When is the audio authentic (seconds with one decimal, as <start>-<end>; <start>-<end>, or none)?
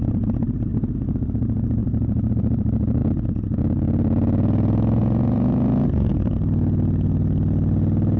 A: 0.7-1.3; 3.0-5.0; 6.1-8.2